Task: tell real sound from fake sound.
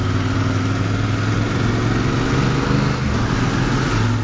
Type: real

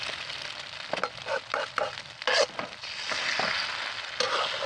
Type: real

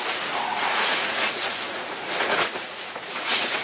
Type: fake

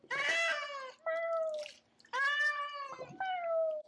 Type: real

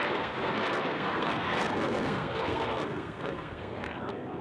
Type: fake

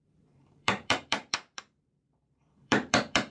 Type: fake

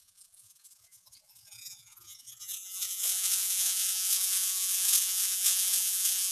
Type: fake